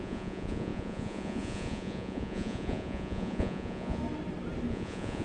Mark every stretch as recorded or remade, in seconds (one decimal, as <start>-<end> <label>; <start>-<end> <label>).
0.0-4.0 remade; 4.0-4.7 recorded; 4.7-5.2 remade